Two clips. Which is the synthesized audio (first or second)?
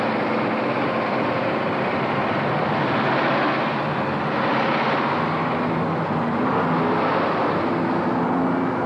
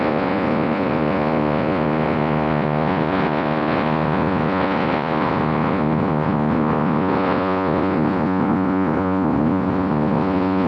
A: second